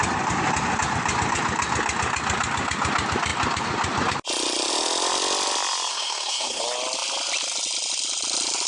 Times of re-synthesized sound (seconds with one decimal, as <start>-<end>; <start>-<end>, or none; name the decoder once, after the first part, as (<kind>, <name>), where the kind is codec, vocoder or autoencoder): 5.9-6.6 (codec, SNAC)